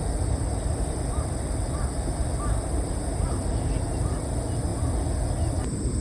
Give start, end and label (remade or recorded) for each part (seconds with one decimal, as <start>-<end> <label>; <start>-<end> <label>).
0.0-0.5 recorded; 0.5-4.1 remade; 4.1-6.0 recorded